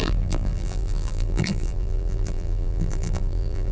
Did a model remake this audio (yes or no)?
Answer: yes